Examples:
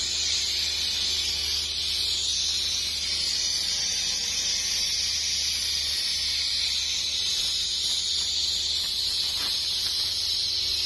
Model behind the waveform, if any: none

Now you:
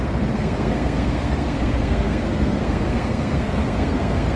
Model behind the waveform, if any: codec, SNAC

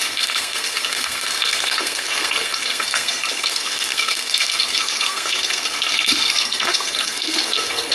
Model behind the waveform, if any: codec, SNAC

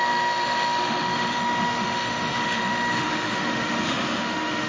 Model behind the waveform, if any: autoencoder, DAC-VAE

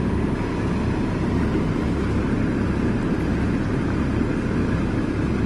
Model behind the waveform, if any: none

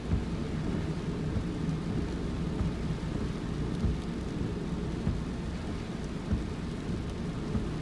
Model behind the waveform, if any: none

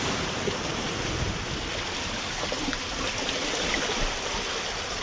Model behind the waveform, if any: none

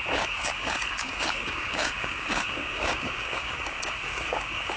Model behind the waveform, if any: codec, DAC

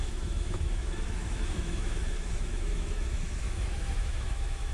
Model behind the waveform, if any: autoencoder, DAC-VAE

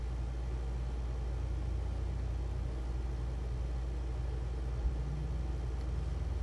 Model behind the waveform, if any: none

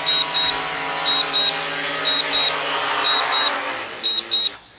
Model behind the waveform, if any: none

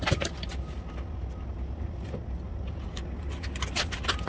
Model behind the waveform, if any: none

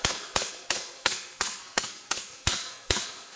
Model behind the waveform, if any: codec, SNAC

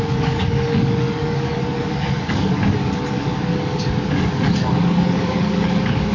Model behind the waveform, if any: codec, DAC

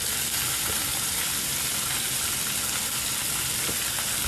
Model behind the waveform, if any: none